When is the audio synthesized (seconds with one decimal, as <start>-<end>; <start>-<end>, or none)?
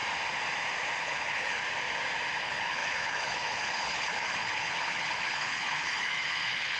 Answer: 1.0-1.6; 2.4-6.8